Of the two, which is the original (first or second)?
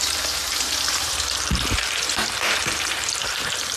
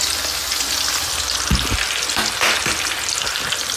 second